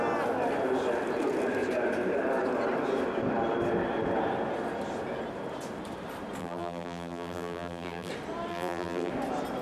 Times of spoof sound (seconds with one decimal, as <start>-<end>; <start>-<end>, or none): 6.4-8.1; 8.5-9.1